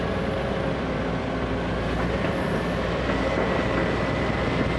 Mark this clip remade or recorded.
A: recorded